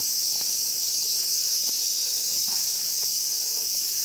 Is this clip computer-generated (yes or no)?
yes